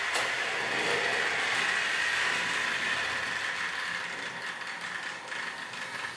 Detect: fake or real real